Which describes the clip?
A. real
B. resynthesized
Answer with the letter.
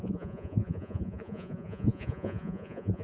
B